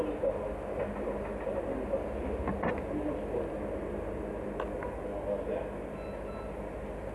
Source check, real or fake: real